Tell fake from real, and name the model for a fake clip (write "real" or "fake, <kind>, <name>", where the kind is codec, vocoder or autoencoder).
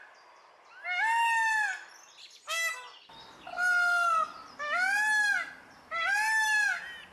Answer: real